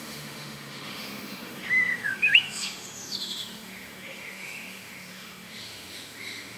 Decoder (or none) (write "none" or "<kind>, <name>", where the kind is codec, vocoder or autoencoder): autoencoder, DAC-VAE